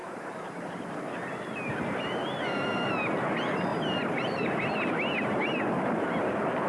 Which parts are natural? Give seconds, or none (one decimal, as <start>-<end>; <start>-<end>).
0.9-6.7